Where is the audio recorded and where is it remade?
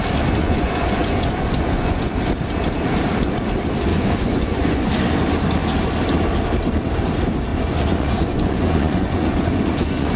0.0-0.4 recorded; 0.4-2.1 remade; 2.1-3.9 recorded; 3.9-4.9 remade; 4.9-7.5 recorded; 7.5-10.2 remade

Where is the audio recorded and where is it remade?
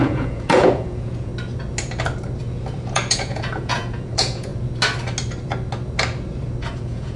0.0-1.3 remade; 1.3-2.9 recorded; 2.9-4.5 remade; 4.5-6.7 recorded; 6.7-7.2 remade